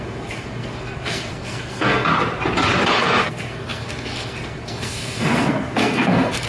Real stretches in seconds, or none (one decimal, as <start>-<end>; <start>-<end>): 2.1-3.0